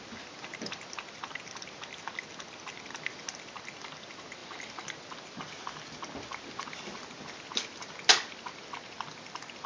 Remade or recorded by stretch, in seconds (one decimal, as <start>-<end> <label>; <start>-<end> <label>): 0.0-9.7 recorded